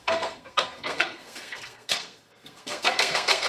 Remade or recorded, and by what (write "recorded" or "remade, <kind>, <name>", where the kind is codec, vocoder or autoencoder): remade, codec, SNAC